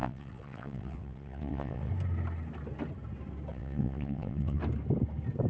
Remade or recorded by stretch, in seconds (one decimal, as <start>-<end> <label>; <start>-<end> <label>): 0.0-1.9 remade; 1.9-3.5 recorded; 3.5-4.6 remade; 4.6-5.5 recorded